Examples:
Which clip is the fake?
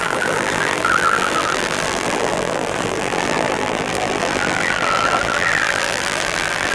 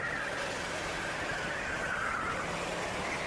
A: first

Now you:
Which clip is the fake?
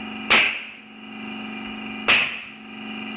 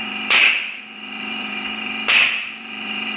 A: second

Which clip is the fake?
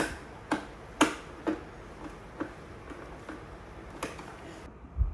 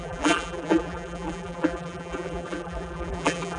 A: second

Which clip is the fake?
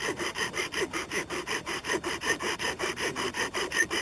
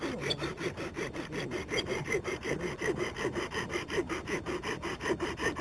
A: first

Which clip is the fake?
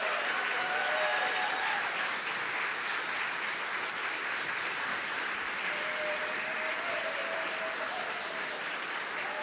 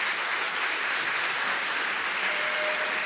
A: first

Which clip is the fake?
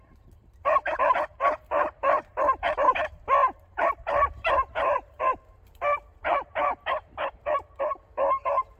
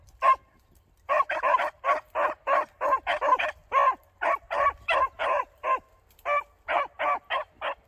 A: first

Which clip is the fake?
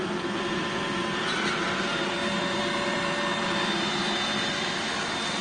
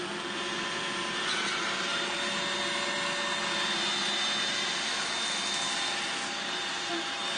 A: first